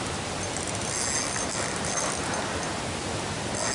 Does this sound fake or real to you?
real